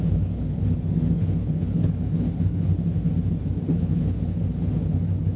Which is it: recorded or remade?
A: remade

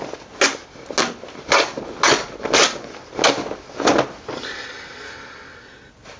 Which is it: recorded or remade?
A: recorded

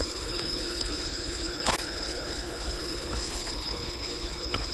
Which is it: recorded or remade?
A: remade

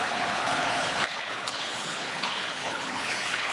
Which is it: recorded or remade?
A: remade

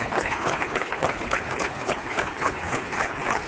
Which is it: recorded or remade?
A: remade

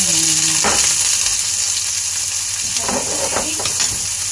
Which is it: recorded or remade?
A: recorded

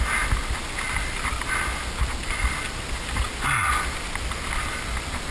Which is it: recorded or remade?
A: recorded